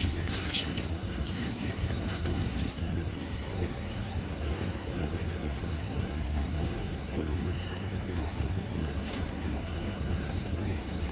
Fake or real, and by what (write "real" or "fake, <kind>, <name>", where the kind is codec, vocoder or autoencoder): fake, codec, SNAC